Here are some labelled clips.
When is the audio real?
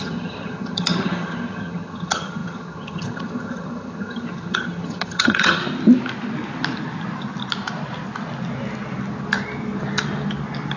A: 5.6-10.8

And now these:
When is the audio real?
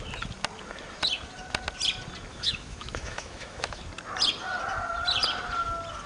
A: 0.0-2.3; 3.8-6.1